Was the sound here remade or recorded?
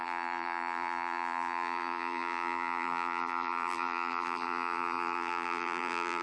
remade